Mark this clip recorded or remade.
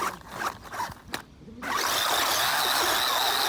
recorded